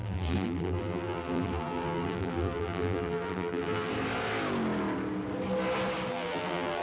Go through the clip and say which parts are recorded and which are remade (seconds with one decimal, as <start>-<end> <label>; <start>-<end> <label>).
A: 0.0-3.9 remade; 3.9-6.1 recorded; 6.1-6.8 remade